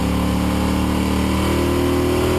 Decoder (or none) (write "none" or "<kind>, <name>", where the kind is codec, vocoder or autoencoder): none